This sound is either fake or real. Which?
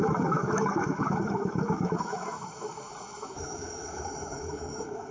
fake